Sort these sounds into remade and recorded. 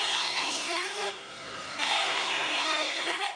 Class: remade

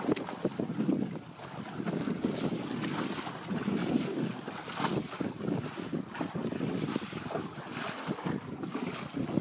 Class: recorded